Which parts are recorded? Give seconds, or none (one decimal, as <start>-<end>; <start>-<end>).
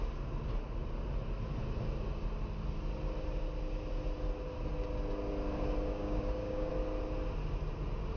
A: 0.0-5.9; 6.7-8.2